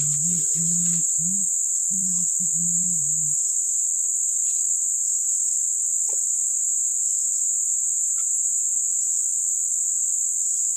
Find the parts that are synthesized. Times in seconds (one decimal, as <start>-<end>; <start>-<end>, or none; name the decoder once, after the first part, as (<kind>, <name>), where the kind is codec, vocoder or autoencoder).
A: 0.0-6.7 (vocoder, BigVGAN v2); 9.0-10.8